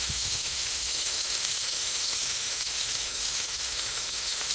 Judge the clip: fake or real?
fake